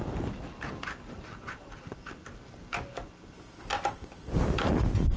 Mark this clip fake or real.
real